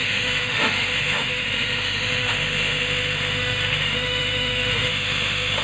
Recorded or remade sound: remade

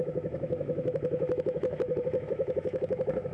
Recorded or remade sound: remade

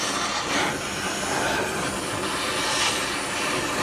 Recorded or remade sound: recorded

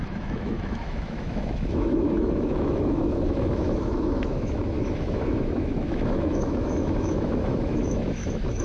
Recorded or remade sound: remade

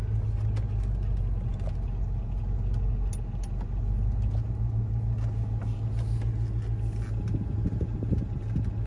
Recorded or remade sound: recorded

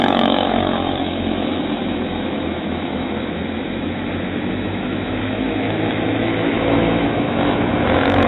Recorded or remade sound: remade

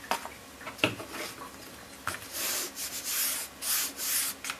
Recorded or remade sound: recorded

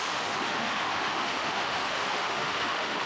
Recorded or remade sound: remade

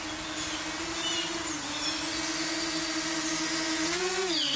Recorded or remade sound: recorded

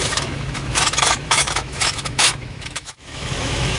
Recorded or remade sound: remade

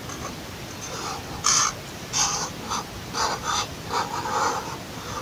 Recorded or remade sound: recorded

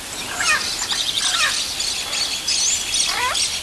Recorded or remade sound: recorded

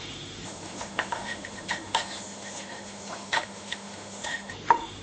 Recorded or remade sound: remade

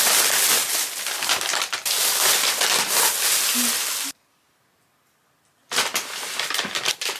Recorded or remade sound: recorded